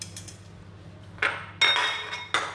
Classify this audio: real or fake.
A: real